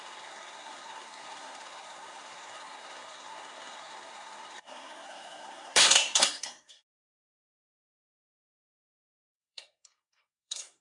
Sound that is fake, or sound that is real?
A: fake